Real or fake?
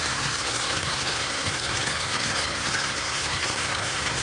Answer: fake